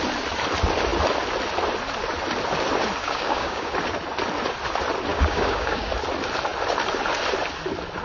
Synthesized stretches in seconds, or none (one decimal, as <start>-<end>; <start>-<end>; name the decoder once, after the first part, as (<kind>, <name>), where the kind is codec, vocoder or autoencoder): 3.0-3.7 (codec, DAC); 5.1-5.9